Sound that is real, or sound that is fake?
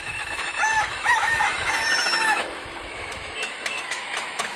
fake